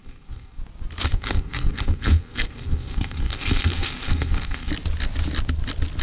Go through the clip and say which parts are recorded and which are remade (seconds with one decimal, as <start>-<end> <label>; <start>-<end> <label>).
0.0-0.6 remade; 0.6-1.1 recorded; 1.1-4.7 remade; 4.7-6.0 recorded